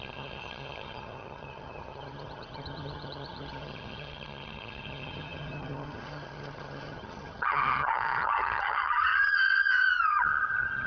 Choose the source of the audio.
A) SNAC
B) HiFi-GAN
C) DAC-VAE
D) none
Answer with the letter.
B